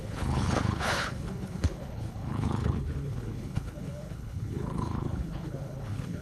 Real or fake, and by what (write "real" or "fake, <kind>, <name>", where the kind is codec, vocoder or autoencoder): fake, codec, HILCodec